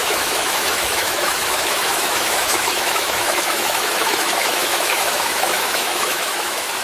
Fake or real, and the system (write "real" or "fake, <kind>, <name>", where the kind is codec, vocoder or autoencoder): fake, autoencoder, DAC-VAE